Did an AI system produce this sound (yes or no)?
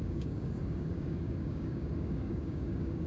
yes